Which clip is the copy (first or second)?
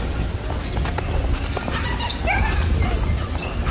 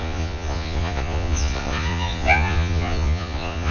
second